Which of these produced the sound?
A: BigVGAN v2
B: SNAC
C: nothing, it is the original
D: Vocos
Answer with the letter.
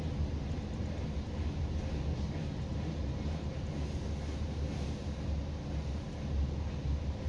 C